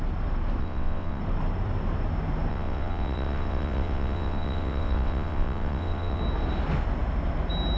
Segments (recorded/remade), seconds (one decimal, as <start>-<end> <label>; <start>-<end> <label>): 0.0-0.6 recorded; 0.6-1.2 remade; 1.2-2.5 recorded; 2.5-6.2 remade; 6.2-7.8 recorded